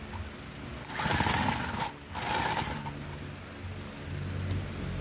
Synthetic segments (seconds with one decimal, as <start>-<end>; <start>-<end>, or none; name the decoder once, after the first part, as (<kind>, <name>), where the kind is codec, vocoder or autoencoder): none